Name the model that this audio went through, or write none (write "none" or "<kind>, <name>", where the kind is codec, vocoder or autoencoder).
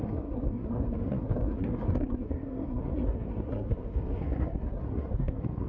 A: codec, SNAC